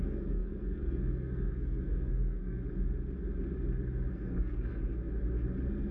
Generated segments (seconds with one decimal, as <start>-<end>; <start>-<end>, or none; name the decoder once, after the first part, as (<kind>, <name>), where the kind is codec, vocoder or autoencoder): 0.0-2.6 (codec, SNAC); 4.1-4.7